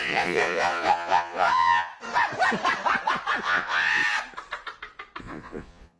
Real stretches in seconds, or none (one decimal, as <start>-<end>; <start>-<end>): 1.9-3.4; 4.0-5.2